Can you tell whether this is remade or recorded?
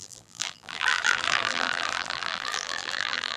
remade